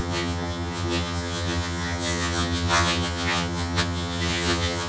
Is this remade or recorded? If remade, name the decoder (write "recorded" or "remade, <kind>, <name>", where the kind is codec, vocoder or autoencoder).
remade, vocoder, HiFi-GAN